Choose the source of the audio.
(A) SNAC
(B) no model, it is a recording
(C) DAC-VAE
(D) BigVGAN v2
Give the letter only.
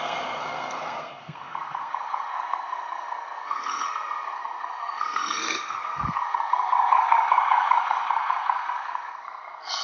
A